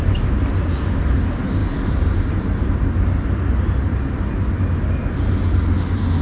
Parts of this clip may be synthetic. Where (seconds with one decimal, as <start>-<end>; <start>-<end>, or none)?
none